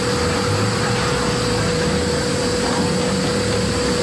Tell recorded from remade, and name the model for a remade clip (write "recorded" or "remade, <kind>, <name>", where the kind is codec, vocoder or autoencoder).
recorded